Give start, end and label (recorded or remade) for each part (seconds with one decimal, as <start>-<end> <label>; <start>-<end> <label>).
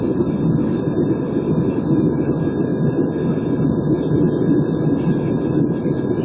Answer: 0.0-6.2 recorded